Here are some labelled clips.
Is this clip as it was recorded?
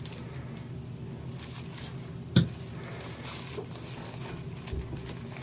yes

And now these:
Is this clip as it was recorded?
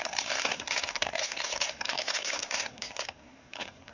no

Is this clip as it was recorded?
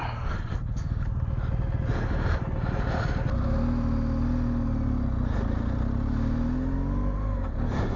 yes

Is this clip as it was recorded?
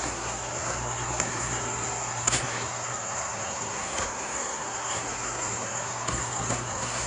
no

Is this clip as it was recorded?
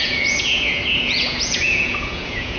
no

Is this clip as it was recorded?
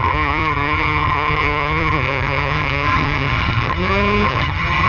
no